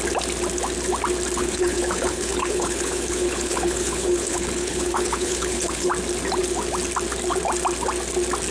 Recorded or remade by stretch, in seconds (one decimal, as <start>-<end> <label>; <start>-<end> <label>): 0.0-1.4 recorded; 1.4-5.9 remade; 5.9-8.5 recorded

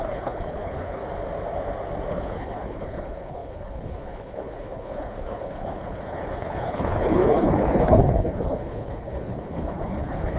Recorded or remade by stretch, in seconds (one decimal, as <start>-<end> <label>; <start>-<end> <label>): 0.0-1.0 remade; 1.0-2.1 recorded; 2.1-10.4 remade

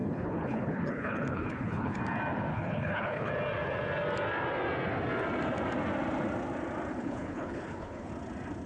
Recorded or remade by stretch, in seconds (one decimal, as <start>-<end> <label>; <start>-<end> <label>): 0.0-2.0 remade; 2.0-2.5 recorded; 2.5-3.3 remade; 3.3-6.9 recorded; 6.9-8.1 remade; 8.1-8.7 recorded

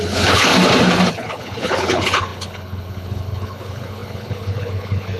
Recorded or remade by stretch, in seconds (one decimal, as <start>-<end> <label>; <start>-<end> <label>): 0.0-0.5 remade; 0.5-1.1 recorded; 1.1-5.2 remade

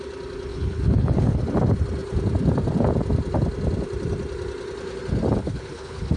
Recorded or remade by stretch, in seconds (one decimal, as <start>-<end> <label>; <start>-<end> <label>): 0.0-0.5 recorded; 0.5-1.4 remade; 1.4-5.4 recorded; 5.4-6.2 remade